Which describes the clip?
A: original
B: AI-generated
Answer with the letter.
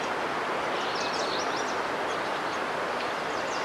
B